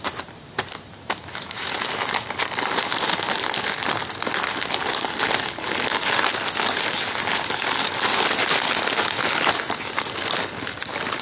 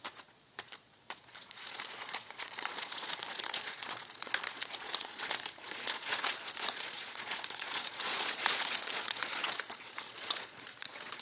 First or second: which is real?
first